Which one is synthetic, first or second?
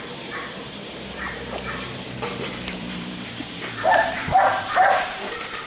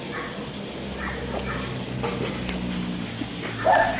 first